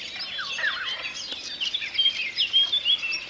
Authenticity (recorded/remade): recorded